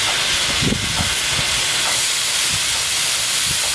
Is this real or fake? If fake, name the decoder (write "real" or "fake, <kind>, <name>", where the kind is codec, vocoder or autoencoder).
real